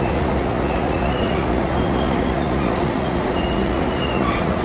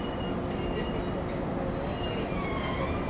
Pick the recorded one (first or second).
second